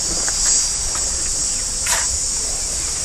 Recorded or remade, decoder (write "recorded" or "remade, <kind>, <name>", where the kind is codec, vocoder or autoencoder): recorded